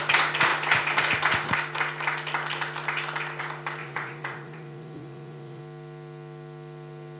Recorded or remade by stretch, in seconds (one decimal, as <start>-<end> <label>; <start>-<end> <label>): 0.0-3.8 recorded; 3.8-5.6 remade; 5.6-7.2 recorded